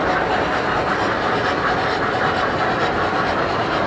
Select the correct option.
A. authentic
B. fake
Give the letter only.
A